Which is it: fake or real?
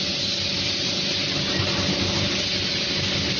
real